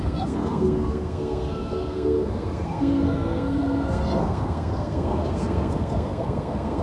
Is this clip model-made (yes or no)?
yes